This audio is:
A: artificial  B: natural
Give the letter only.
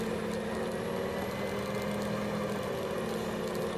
B